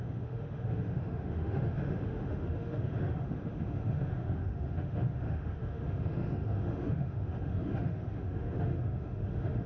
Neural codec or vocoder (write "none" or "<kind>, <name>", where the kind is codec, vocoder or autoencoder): autoencoder, DAC-VAE